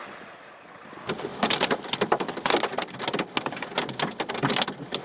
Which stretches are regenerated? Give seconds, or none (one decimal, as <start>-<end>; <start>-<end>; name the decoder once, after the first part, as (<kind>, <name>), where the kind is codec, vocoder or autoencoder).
none